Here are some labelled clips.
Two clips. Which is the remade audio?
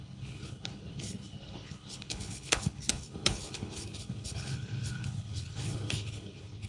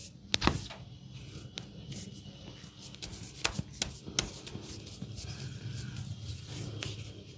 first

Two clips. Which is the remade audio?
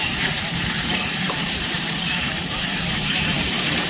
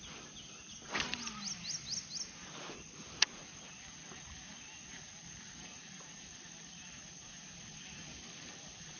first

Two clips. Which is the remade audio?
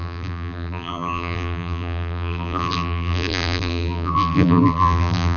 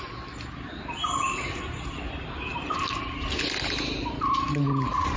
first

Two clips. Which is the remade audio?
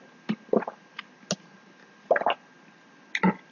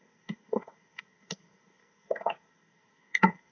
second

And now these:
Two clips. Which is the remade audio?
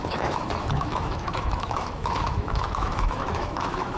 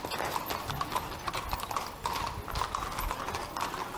first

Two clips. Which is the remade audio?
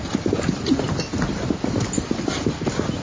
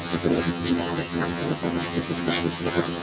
second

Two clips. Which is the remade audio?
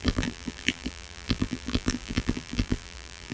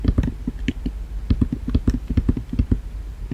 first